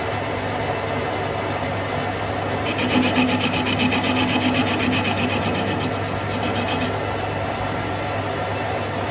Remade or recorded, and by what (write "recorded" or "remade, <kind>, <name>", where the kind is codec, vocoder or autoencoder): recorded